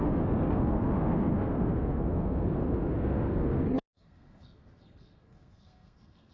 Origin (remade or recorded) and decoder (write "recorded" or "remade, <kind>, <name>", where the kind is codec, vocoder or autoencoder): remade, codec, SNAC